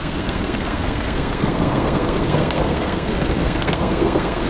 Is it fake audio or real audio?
fake